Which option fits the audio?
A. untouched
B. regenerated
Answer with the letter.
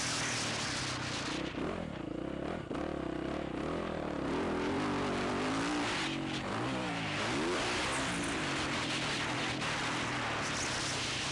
A